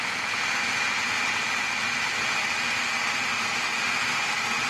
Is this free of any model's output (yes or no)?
yes